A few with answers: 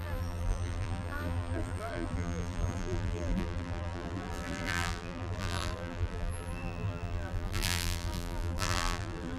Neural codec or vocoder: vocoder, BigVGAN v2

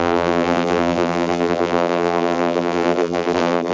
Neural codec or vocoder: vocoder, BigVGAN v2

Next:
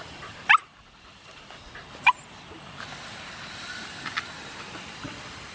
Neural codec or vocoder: vocoder, BigVGAN v2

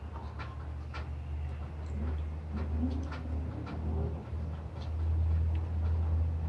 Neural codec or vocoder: none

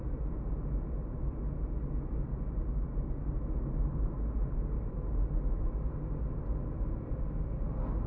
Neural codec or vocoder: none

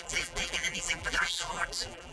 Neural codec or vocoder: vocoder, BigVGAN v2